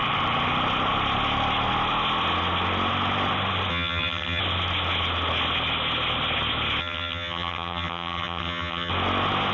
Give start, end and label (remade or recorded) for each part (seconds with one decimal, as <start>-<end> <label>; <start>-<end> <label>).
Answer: 0.0-3.7 recorded; 3.7-4.4 remade; 4.4-6.8 recorded; 6.8-8.9 remade; 8.9-9.5 recorded